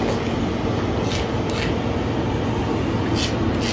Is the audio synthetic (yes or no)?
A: no